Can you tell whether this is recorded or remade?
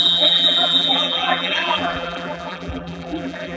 remade